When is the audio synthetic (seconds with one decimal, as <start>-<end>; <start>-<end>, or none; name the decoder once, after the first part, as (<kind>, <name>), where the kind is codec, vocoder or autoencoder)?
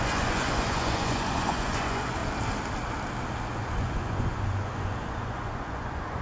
0.0-2.2 (vocoder, Vocos); 3.5-6.2